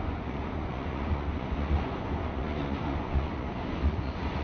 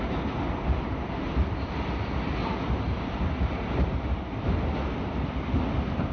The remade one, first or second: first